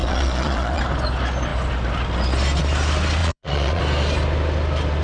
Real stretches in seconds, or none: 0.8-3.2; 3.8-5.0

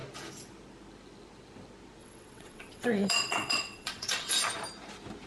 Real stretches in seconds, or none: 0.0-2.0; 4.3-5.3

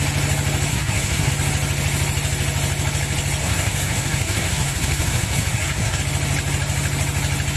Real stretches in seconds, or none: 0.0-0.7; 1.3-3.4; 6.0-7.6

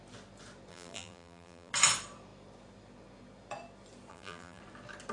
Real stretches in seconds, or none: 0.0-0.7; 1.7-4.1; 4.6-5.1

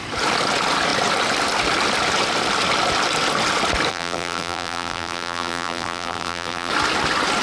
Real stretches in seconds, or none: 0.0-3.9; 6.7-7.4